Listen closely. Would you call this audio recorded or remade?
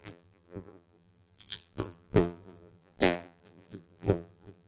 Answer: remade